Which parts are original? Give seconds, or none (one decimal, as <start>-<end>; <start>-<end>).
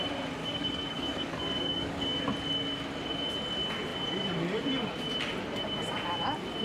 0.0-0.4; 2.2-6.6